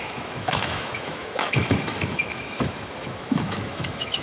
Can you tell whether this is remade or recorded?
remade